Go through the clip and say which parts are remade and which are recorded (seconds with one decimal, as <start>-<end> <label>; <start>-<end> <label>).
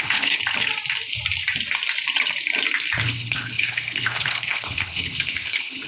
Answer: 0.0-0.4 remade; 0.4-3.0 recorded; 3.0-5.9 remade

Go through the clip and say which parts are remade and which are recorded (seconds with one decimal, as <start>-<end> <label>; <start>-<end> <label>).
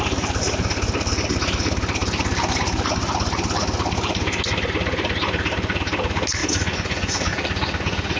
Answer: 0.0-6.4 recorded; 6.4-8.2 remade